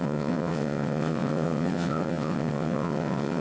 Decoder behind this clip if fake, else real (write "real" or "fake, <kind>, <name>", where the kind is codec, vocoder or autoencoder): fake, vocoder, WaveNeXt